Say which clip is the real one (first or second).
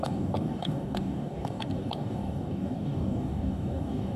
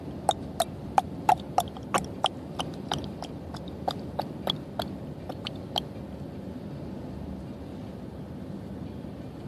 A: second